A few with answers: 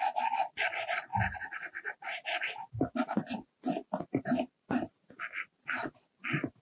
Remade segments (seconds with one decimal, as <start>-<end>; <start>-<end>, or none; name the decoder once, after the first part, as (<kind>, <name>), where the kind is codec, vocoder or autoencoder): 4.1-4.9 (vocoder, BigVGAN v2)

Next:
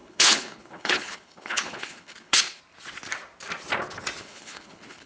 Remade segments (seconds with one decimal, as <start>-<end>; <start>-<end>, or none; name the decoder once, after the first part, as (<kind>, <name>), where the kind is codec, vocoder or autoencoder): 0.0-2.6 (codec, HILCodec); 4.2-5.1

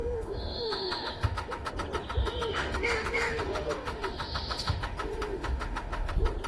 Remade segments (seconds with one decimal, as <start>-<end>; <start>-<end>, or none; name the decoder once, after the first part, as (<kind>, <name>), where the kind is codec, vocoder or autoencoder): 0.0-1.7 (autoencoder, DAC-VAE); 2.2-6.1

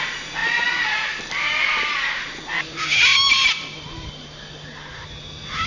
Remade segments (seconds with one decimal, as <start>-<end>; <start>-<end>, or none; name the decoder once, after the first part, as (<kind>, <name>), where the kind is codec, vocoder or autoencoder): 0.4-1.2 (vocoder, Vocos)

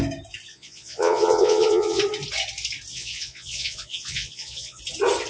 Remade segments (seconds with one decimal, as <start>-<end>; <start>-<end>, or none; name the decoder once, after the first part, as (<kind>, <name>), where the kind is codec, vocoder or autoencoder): 0.5-2.0 (vocoder, Vocos); 2.9-4.8